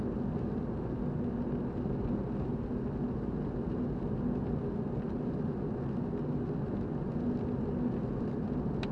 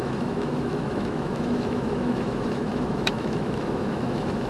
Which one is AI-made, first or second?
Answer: second